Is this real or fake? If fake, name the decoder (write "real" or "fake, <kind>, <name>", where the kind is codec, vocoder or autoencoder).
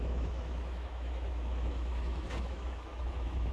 fake, autoencoder, DAC-VAE